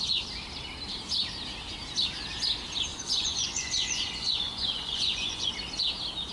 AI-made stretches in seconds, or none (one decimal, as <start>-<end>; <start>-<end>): 2.9-5.5